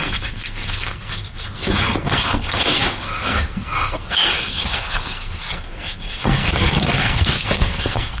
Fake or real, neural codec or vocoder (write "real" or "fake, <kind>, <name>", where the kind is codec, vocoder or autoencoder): fake, codec, SNAC